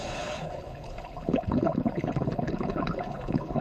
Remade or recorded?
remade